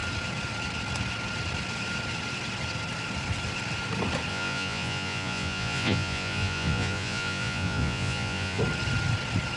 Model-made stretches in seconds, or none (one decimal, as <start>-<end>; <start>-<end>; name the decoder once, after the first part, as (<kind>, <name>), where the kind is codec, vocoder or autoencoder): 4.3-8.6 (vocoder, Vocos)